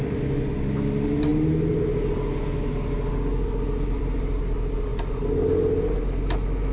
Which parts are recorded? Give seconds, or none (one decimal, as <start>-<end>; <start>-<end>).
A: 0.0-6.7